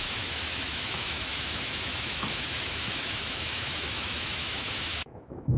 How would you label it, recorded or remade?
remade